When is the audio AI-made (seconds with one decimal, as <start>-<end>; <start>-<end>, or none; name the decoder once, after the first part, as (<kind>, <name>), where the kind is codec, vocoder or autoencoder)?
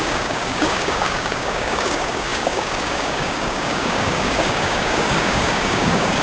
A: 0.0-6.2 (codec, DAC)